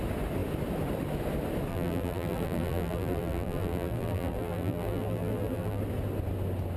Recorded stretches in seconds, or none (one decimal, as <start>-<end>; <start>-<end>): 0.0-1.7; 5.8-6.8